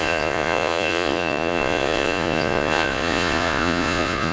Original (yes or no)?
no